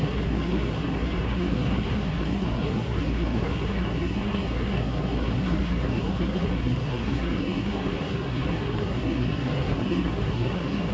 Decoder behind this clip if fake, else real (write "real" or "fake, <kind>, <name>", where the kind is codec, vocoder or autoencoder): fake, codec, SNAC